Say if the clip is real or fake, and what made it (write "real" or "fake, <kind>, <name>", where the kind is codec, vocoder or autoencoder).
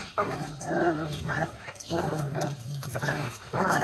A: fake, codec, SNAC